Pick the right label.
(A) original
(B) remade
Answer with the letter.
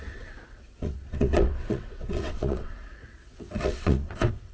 B